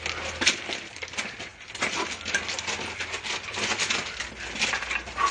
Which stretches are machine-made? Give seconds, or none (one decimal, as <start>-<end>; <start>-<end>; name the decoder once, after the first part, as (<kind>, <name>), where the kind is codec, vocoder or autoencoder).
none